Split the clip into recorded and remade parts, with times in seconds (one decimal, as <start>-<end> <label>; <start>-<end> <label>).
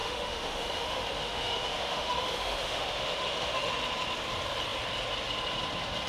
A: 0.0-3.7 remade; 3.7-6.1 recorded